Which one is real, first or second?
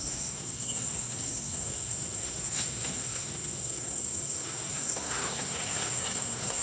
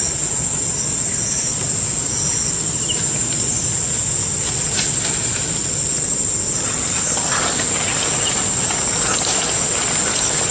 second